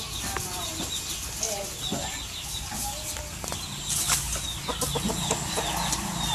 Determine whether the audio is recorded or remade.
recorded